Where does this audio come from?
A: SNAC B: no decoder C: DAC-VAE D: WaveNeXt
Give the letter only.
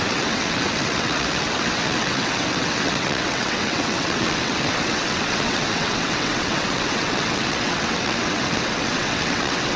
D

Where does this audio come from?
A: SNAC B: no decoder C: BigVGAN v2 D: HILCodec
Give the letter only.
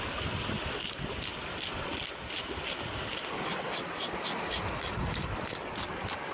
B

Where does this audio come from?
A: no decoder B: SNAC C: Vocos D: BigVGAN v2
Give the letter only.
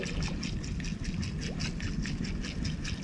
A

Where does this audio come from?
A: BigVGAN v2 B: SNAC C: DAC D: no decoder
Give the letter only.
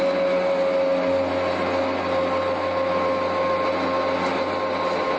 D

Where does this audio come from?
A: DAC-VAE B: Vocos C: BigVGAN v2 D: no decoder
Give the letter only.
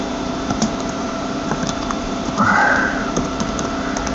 C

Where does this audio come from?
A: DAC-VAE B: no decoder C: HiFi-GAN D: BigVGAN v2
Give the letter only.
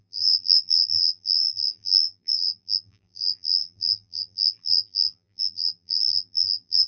D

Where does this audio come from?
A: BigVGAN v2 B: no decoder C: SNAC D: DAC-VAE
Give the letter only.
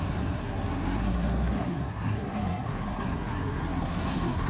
C